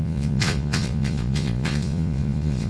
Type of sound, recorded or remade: remade